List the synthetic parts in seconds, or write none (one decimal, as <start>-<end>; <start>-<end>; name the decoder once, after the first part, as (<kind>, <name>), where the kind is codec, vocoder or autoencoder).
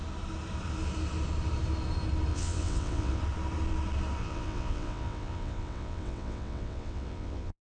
2.3-3.2 (vocoder, WaveNeXt); 4.2-7.6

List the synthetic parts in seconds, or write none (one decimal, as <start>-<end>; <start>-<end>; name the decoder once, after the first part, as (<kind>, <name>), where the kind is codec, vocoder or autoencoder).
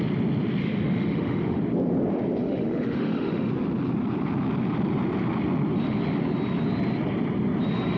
0.6-1.6 (autoencoder, DAC-VAE); 2.4-3.5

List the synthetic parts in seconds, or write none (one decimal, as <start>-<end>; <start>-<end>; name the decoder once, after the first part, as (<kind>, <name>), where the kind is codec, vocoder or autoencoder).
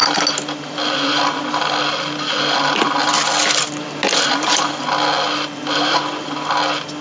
none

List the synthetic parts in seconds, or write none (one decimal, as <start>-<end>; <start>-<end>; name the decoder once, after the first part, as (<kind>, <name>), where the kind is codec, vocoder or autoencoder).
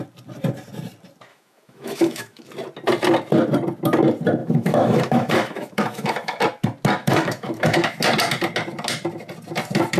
1.3-2.5 (autoencoder, DAC-VAE); 4.4-6.4; 7.0-8.0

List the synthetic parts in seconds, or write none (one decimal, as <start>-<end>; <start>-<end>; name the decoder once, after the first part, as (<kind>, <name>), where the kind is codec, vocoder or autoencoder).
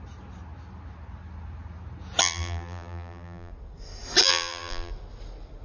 2.2-3.5 (vocoder, BigVGAN v2); 4.2-4.9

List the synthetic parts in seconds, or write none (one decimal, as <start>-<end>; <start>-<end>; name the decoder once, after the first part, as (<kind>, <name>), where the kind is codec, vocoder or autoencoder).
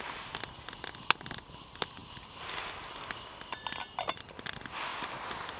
none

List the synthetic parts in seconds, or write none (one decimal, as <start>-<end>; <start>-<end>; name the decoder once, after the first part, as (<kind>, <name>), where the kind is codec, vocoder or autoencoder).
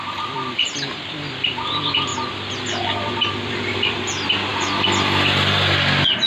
0.0-2.1 (vocoder, BigVGAN v2); 3.1-4.5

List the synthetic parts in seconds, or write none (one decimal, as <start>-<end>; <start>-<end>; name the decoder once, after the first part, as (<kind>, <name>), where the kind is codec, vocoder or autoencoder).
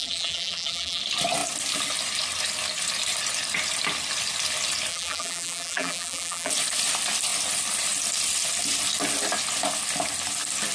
0.0-1.0 (vocoder, BigVGAN v2); 4.9-6.5